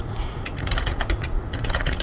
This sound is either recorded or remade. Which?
remade